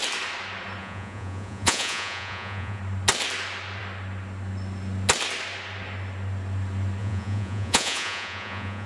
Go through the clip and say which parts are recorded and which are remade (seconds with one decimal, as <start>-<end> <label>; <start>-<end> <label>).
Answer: 0.0-0.8 recorded; 0.8-2.8 remade; 2.8-7.0 recorded; 7.0-8.9 remade